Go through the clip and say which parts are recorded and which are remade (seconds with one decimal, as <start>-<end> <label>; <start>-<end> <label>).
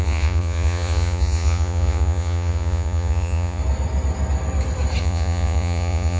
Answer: 0.0-3.6 remade; 3.6-5.0 recorded; 5.0-6.2 remade